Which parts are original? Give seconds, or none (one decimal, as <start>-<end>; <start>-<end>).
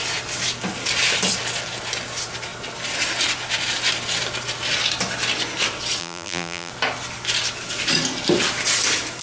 0.0-6.0; 6.7-9.2